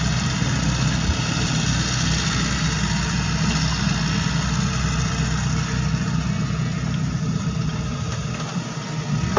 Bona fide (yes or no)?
yes